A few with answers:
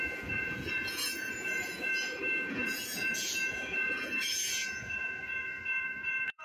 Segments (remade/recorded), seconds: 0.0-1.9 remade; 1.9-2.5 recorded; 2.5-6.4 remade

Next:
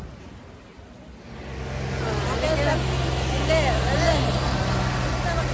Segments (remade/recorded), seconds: 0.0-0.7 recorded; 0.7-2.4 remade; 2.4-5.5 recorded